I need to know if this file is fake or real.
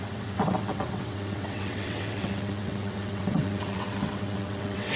fake